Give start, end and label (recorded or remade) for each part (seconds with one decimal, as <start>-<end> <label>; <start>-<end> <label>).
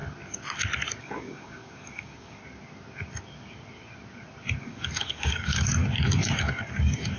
0.0-1.0 recorded; 1.0-2.4 remade; 2.4-4.6 recorded; 4.6-5.8 remade; 5.8-6.4 recorded; 6.4-7.2 remade